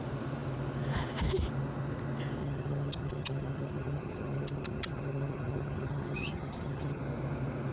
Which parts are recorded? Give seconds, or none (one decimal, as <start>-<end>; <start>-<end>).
0.0-2.4; 7.0-7.7